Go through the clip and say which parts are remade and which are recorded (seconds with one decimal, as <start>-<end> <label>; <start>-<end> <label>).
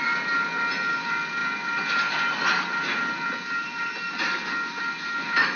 0.0-5.6 recorded